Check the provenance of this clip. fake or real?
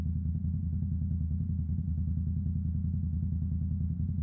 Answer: real